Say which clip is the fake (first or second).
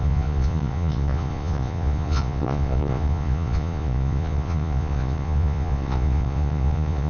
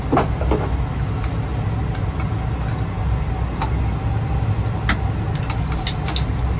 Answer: first